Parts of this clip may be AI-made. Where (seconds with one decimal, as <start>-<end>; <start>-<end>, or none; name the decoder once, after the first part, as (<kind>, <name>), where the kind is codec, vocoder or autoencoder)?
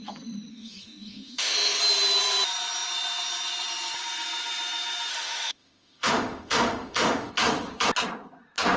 0.5-1.8 (autoencoder, DAC-VAE); 5.1-7.3